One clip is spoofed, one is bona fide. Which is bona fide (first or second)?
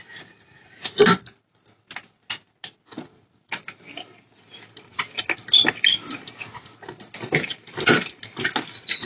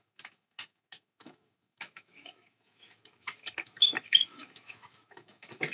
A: first